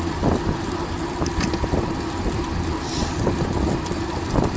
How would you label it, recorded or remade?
recorded